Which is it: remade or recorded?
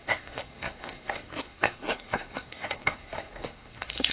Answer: remade